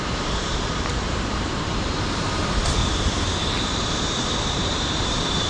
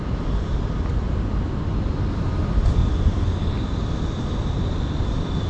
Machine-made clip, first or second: first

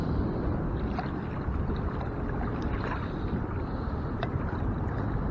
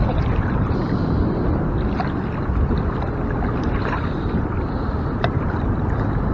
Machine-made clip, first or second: first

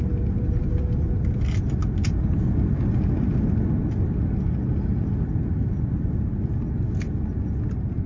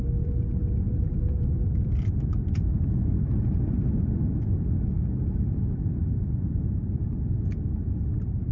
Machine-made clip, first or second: second